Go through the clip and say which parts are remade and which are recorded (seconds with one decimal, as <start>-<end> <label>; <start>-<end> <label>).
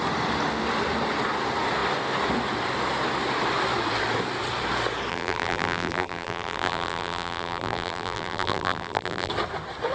0.0-5.1 recorded; 5.1-9.3 remade; 9.3-9.9 recorded